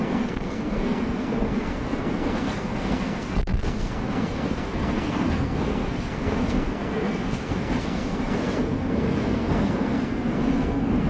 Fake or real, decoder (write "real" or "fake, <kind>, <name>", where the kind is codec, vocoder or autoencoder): fake, codec, SNAC